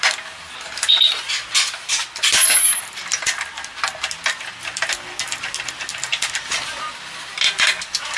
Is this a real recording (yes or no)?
yes